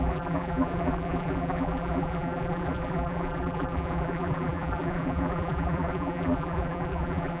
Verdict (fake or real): fake